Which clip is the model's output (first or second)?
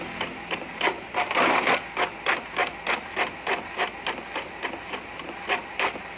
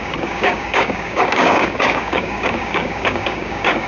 second